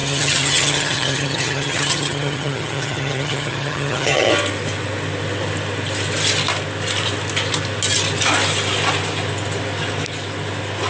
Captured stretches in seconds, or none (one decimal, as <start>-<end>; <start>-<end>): 4.3-10.9